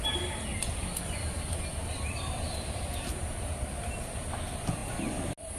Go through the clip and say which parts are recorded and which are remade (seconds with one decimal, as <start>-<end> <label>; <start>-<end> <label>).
0.0-5.6 recorded